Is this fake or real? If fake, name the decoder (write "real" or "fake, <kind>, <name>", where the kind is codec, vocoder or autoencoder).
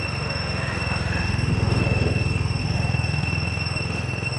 fake, autoencoder, DAC-VAE